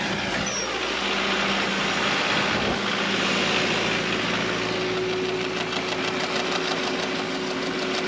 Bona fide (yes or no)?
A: yes